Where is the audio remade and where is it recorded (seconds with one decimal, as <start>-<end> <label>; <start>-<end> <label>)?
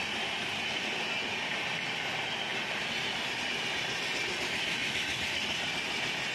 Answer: 0.0-6.3 recorded